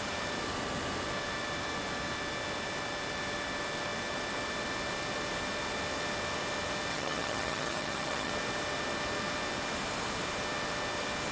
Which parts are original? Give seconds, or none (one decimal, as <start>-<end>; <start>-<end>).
0.0-6.9; 8.3-11.3